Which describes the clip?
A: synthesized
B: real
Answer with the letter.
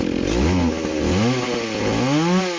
B